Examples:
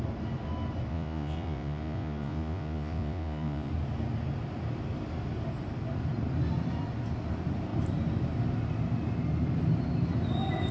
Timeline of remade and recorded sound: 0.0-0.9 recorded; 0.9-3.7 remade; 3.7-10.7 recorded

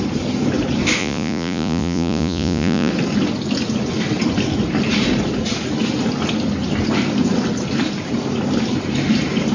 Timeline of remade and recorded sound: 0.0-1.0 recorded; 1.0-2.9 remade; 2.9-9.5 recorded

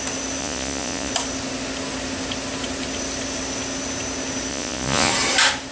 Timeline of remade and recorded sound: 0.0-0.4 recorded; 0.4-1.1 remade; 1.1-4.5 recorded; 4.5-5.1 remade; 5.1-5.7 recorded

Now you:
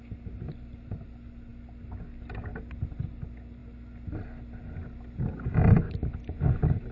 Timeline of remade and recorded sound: 0.0-6.9 recorded